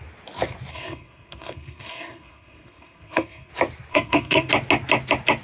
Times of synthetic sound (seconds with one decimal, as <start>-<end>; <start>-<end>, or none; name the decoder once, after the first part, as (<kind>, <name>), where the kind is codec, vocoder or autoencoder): 0.7-3.5 (codec, SNAC); 3.9-4.5